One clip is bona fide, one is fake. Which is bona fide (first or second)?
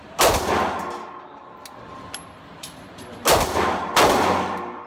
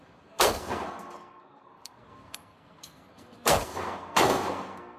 first